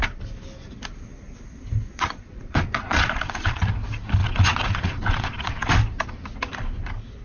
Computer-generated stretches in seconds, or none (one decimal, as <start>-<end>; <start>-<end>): 1.9-3.6; 4.2-5.7